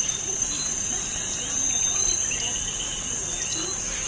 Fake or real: real